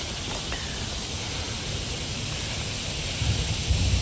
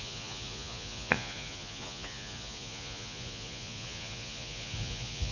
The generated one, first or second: second